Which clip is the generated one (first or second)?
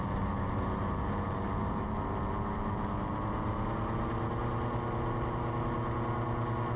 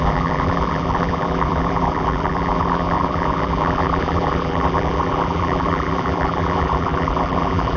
second